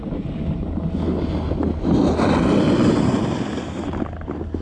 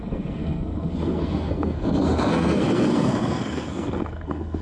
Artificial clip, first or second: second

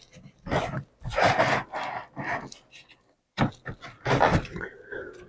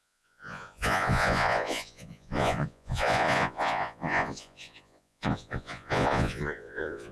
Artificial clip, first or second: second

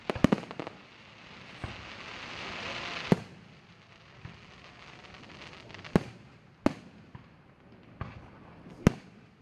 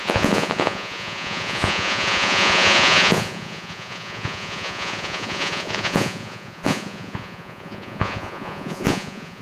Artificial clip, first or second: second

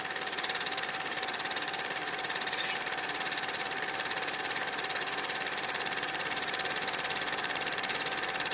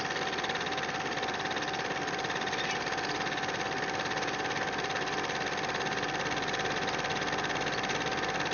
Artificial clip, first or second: first